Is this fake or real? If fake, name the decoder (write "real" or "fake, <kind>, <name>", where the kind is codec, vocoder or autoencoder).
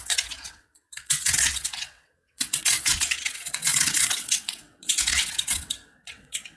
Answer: fake, vocoder, WaveNeXt